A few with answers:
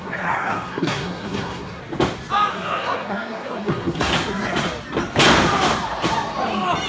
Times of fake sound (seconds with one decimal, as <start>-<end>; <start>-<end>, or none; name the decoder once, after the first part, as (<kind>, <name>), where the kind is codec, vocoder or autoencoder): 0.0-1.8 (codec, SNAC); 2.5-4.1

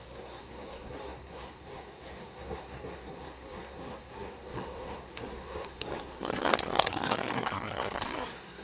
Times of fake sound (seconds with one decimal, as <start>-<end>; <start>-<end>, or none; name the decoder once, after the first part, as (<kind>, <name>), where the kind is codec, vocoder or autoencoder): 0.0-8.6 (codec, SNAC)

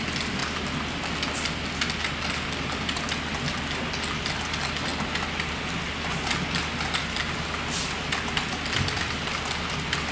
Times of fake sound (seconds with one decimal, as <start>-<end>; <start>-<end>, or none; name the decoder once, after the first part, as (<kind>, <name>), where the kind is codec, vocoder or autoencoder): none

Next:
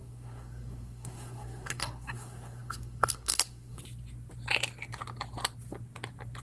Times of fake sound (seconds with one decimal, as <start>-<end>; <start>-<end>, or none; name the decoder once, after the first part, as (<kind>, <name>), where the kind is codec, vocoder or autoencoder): 0.0-3.8 (codec, SNAC)

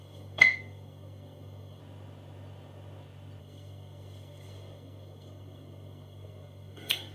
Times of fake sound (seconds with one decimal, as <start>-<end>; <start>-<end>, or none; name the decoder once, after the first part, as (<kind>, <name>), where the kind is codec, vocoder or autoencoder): 0.0-1.8 (codec, SNAC); 3.4-7.1

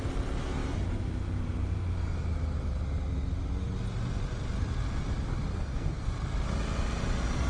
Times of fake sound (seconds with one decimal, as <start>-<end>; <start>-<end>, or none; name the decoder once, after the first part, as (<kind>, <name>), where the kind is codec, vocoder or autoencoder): 5.5-6.1 (codec, SNAC)

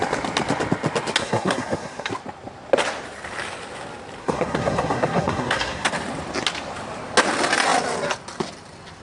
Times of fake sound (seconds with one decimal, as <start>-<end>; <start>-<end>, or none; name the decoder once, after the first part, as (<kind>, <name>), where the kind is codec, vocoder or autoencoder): 1.2-2.1 (codec, SNAC); 4.2-5.9